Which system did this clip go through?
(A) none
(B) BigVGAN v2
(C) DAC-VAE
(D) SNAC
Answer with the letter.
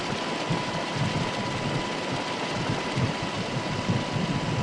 A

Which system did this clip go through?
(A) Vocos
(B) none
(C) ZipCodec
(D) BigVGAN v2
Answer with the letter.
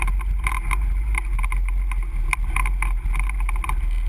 B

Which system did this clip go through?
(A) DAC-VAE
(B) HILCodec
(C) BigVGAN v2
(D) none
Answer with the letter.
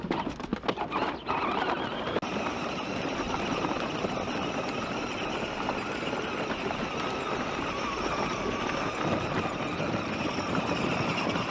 D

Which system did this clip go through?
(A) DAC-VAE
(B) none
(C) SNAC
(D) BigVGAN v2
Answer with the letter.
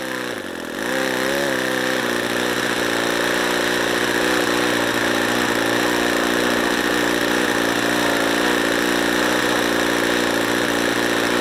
B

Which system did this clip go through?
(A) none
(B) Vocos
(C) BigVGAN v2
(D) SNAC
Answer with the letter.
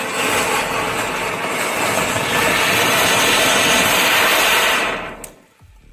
A